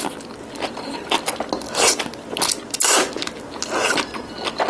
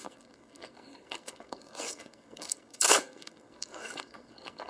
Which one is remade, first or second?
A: second